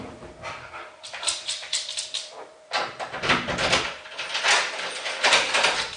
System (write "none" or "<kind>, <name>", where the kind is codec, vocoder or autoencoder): none